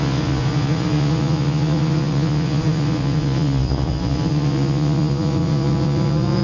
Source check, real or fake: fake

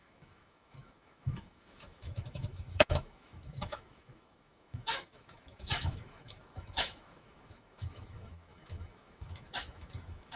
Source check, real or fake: fake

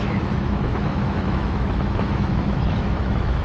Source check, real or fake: fake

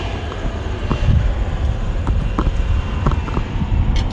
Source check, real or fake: real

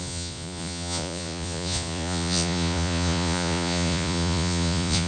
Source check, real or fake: fake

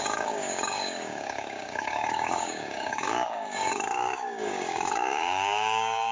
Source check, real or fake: fake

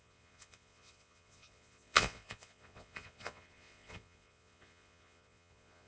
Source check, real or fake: fake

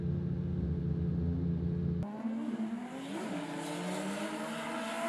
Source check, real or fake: real